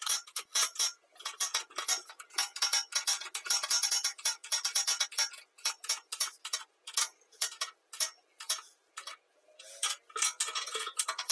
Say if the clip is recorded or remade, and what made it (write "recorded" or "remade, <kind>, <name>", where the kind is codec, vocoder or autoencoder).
remade, vocoder, Vocos